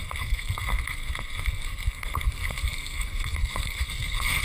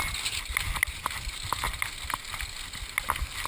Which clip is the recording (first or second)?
second